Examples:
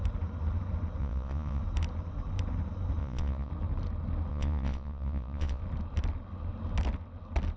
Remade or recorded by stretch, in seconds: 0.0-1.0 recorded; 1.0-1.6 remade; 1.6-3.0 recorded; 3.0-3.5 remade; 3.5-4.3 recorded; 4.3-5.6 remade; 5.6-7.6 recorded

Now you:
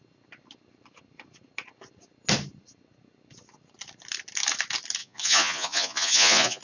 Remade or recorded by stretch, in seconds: 0.0-5.0 recorded; 5.0-6.6 remade

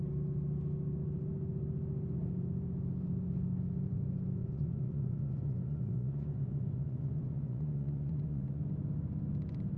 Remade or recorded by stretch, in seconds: 0.0-4.4 recorded; 4.4-8.6 remade; 8.6-9.8 recorded

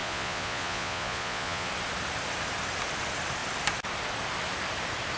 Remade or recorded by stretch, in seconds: 0.0-1.7 remade; 1.7-5.2 recorded